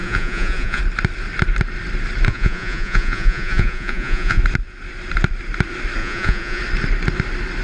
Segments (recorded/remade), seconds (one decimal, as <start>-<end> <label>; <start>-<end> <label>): 0.0-0.8 remade; 0.8-2.3 recorded; 2.3-4.4 remade; 4.4-6.0 recorded; 6.0-6.6 remade; 6.6-7.6 recorded